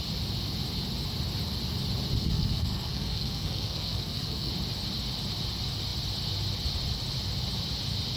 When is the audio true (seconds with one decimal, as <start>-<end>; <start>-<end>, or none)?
0.0-2.2; 4.5-8.2